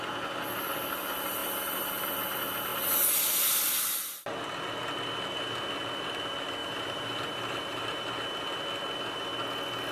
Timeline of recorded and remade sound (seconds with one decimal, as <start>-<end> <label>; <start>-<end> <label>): 0.0-6.6 recorded; 6.6-7.8 remade; 7.8-9.9 recorded